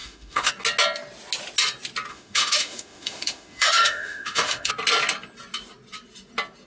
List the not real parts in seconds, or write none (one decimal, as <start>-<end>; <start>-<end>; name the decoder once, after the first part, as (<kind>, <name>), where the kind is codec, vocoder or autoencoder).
0.0-0.5 (autoencoder, DAC-VAE); 2.1-4.7